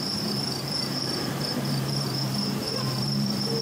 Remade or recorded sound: remade